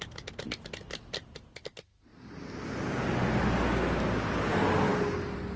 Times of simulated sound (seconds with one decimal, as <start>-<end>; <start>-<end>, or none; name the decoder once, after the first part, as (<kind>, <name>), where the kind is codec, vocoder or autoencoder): none